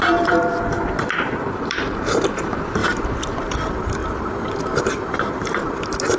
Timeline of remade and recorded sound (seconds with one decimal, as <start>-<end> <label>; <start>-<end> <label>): 0.0-2.8 remade; 2.8-3.4 recorded; 3.4-4.0 remade; 4.0-4.8 recorded; 4.8-6.2 remade